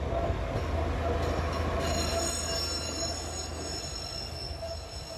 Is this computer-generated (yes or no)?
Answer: no